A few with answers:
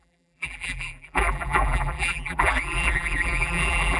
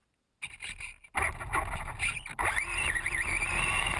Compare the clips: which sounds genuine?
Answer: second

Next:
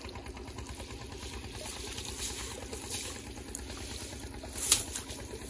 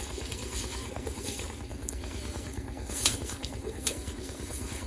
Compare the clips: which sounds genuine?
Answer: first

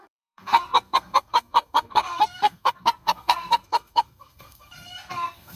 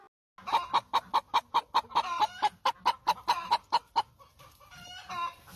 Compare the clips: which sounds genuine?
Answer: second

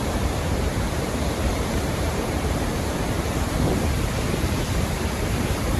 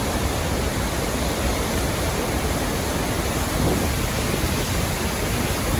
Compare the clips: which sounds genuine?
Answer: second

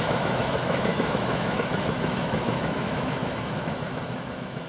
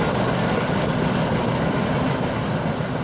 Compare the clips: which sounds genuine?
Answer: second